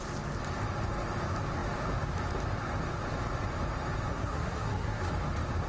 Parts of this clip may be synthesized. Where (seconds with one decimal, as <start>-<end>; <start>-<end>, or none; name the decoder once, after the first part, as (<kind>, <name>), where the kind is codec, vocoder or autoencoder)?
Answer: 4.1-5.1 (codec, SNAC)